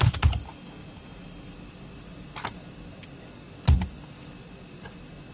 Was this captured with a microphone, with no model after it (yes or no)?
yes